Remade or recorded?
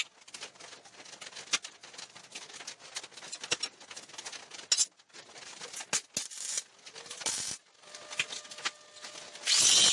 recorded